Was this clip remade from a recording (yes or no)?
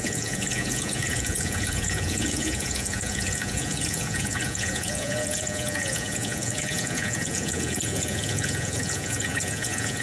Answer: yes